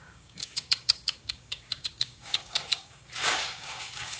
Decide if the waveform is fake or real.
fake